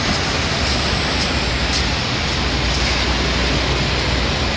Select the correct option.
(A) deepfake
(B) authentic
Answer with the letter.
B